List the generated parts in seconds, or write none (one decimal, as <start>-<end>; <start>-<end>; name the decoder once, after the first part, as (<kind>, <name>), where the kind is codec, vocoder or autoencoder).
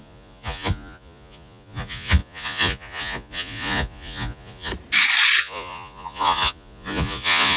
0.0-4.7 (vocoder, Vocos); 5.4-7.6